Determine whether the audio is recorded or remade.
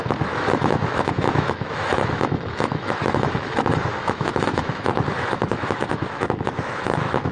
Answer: remade